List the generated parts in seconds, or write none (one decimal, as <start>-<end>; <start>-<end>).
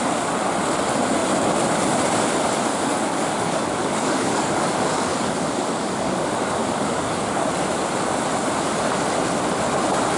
2.7-7.5